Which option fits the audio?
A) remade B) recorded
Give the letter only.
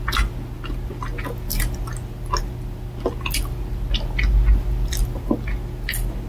B